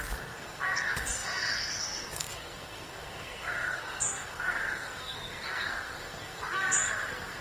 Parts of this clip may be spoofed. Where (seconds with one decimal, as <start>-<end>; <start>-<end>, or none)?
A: 0.0-7.4